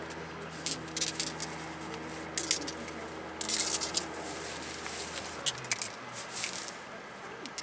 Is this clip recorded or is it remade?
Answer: recorded